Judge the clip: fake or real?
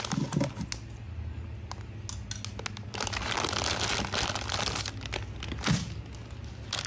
real